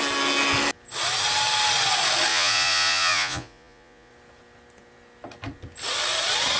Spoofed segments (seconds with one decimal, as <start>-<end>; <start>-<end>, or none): 2.3-4.1